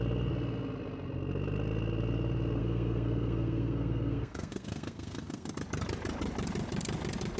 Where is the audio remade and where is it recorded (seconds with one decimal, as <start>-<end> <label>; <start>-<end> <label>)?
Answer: 0.0-2.6 recorded; 2.6-5.5 remade; 5.5-7.4 recorded